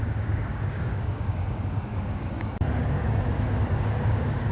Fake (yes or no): yes